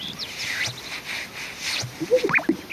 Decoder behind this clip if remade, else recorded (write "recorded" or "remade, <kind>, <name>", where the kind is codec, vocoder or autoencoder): recorded